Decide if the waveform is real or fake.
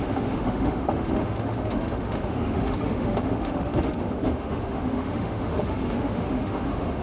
fake